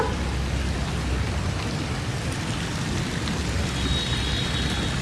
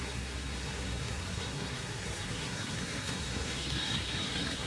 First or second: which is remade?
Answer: second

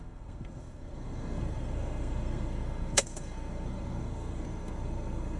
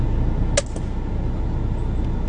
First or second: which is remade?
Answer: first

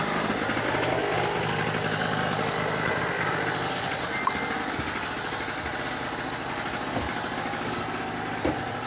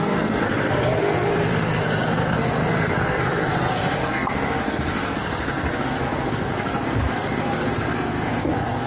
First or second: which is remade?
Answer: second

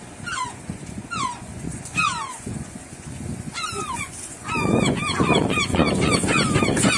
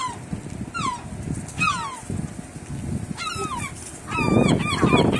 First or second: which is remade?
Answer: first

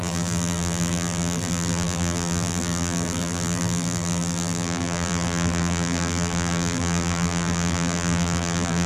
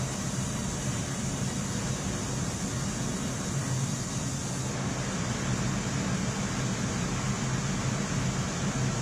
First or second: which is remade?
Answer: first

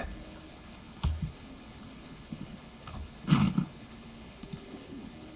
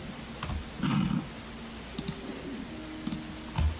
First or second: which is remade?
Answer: first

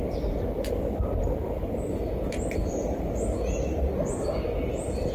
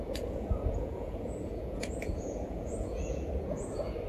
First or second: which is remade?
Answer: second